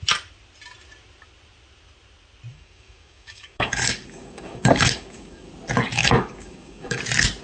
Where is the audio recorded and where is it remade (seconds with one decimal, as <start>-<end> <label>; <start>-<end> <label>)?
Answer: 0.0-2.5 recorded; 2.5-5.5 remade; 5.5-6.0 recorded; 6.0-7.0 remade; 7.0-7.4 recorded